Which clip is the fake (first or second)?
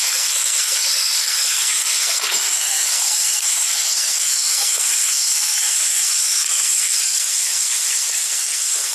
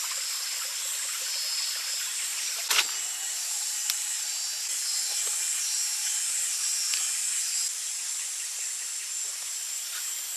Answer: first